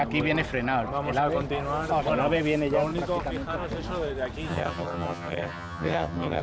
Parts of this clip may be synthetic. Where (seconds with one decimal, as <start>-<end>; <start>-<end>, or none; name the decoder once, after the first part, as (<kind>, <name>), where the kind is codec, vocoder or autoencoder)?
4.5-6.4 (vocoder, HiFi-GAN)